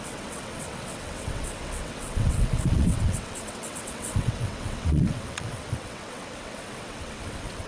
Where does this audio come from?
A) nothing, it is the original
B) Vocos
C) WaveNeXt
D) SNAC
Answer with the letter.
C